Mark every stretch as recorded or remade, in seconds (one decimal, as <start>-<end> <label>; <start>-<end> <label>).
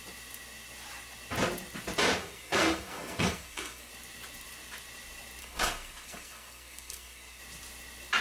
0.0-2.2 recorded; 2.2-3.9 remade; 3.9-5.4 recorded; 5.4-7.4 remade; 7.4-8.2 recorded